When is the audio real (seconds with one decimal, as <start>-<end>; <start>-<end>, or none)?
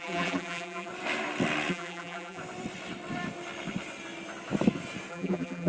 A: 0.9-1.7; 2.4-5.1